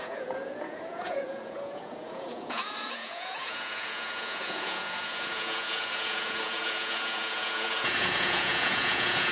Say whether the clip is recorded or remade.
remade